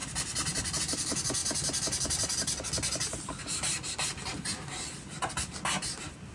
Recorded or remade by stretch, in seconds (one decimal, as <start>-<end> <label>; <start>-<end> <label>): 0.0-0.8 remade; 0.8-6.3 recorded